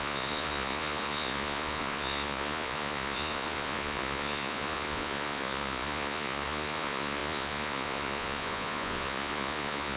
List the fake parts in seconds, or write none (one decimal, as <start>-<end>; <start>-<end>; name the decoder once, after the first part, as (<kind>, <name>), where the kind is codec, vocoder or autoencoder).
0.0-10.0 (vocoder, Vocos)